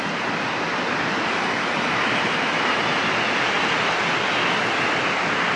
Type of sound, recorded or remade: recorded